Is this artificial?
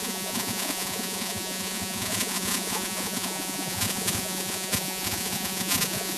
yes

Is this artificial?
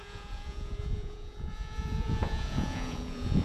yes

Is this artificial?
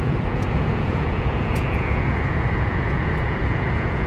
yes